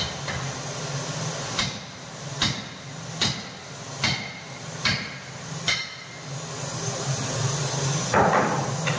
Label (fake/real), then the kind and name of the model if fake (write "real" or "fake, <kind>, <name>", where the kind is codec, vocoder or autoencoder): real